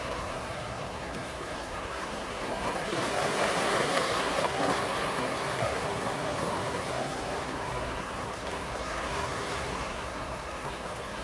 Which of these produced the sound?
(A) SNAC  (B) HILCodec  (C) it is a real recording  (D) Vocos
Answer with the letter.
A